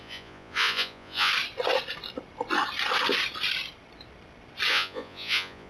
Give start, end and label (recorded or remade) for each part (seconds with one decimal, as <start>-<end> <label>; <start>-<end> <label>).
0.0-1.3 remade; 1.3-4.7 recorded; 4.7-5.7 remade